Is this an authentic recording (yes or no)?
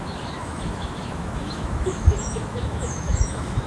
no